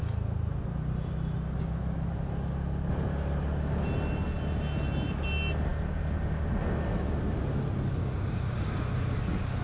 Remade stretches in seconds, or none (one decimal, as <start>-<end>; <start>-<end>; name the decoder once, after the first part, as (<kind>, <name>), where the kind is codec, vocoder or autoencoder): 8.0-9.2 (codec, DAC)